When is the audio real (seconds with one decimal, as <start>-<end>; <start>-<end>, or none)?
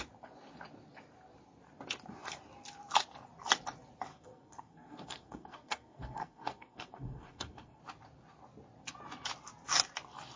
0.0-4.1; 7.8-10.4